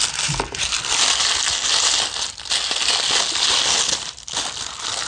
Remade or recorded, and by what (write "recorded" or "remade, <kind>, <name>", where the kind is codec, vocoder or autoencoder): recorded